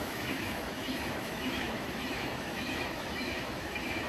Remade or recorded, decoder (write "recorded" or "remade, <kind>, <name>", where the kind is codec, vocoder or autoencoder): remade, autoencoder, DAC-VAE